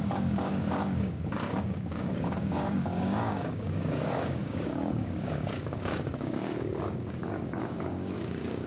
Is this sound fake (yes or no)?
yes